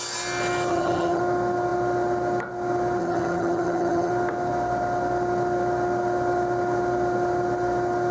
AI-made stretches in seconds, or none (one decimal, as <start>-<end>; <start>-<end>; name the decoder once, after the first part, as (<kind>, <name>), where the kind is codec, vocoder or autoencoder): 0.7-1.2 (vocoder, HiFi-GAN); 3.0-4.1